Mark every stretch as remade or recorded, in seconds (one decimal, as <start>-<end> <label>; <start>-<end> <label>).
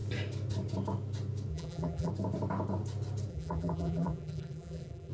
0.0-1.5 recorded; 1.5-2.1 remade; 2.1-3.3 recorded; 3.3-5.1 remade